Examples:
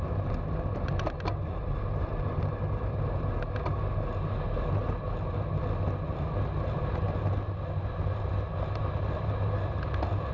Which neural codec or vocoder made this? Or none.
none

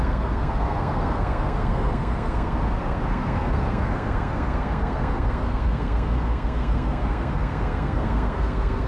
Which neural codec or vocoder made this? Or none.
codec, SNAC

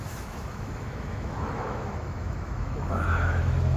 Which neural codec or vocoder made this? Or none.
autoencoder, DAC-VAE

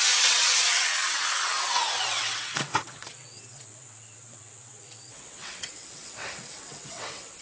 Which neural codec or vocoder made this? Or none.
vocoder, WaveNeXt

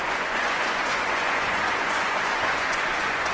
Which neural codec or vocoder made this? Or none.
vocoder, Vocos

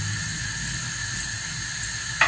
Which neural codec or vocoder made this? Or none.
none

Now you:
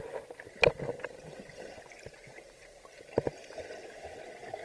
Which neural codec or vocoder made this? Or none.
none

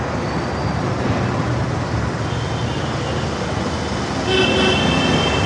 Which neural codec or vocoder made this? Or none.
none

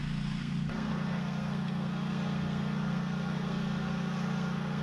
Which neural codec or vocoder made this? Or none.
codec, SNAC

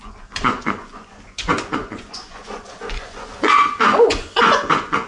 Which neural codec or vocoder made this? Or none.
vocoder, Vocos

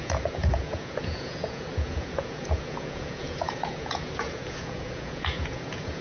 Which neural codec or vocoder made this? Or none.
vocoder, Vocos